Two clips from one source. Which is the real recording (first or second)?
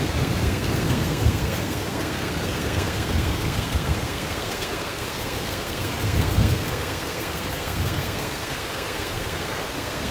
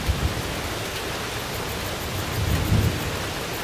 second